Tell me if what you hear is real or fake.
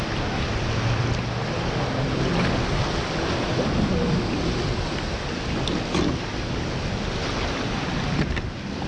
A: real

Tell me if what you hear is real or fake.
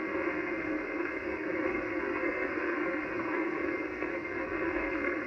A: fake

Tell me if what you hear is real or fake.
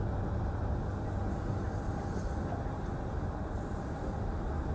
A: real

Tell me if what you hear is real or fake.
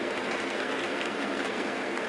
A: fake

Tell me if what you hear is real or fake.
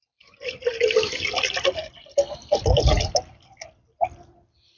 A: real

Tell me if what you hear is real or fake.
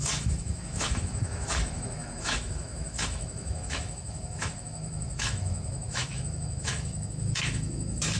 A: fake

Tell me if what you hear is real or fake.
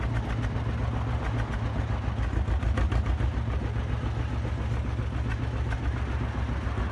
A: real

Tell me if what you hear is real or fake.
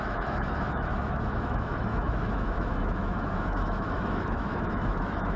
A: fake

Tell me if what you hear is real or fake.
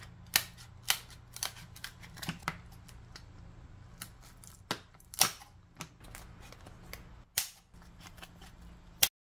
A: real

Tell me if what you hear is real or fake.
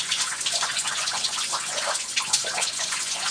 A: fake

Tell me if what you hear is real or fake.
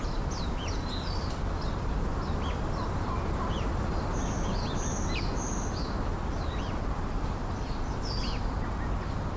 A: real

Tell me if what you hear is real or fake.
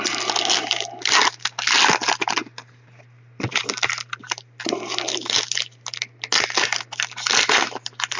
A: real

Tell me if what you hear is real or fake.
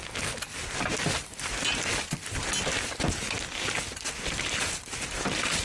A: real